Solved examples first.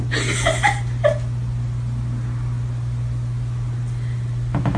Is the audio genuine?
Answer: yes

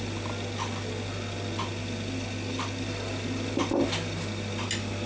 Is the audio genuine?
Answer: yes